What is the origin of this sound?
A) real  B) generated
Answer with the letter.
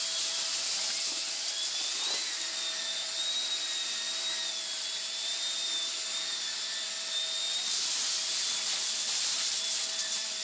B